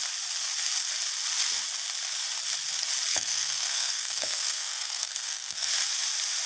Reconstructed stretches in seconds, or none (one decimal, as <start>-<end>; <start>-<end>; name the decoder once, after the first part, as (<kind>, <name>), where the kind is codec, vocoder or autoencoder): 3.1-5.7 (codec, SNAC)